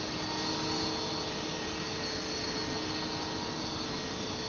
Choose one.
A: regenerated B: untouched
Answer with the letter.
B